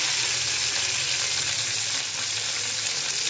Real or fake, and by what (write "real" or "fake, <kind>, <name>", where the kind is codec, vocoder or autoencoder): real